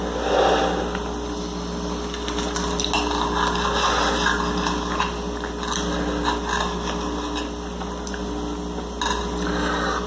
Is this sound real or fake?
real